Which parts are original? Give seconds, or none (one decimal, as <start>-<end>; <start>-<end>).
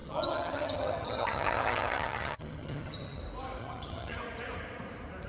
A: 3.2-3.6; 4.2-5.3